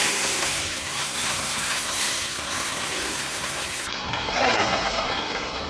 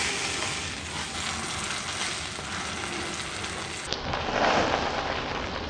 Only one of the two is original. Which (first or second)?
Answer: second